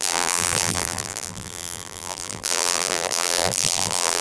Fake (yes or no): yes